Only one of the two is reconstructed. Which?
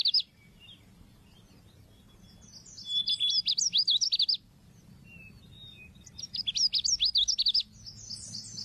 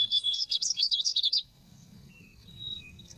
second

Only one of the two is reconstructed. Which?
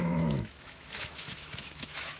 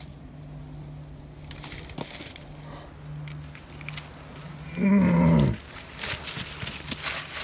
first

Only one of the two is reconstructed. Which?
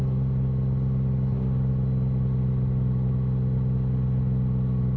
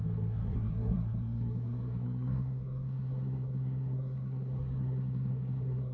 second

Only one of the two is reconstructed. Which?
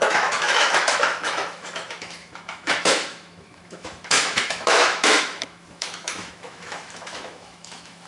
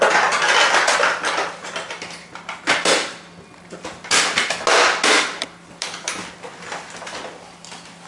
first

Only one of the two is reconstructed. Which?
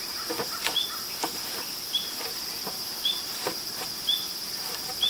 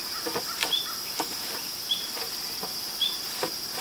second